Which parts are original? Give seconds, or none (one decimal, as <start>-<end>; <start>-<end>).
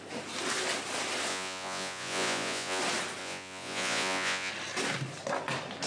0.0-1.3; 2.8-3.2; 4.5-5.9